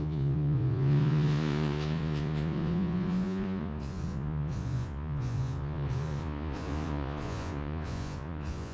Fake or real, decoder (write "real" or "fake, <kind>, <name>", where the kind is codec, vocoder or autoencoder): fake, vocoder, Vocos